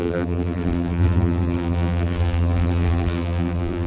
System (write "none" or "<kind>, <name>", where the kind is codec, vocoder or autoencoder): vocoder, BigVGAN v2